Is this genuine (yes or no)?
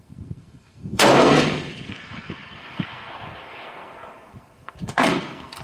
no